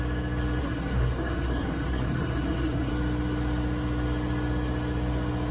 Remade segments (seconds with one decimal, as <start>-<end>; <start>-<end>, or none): 0.6-2.9